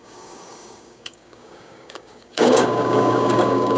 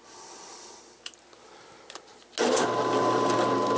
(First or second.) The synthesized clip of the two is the first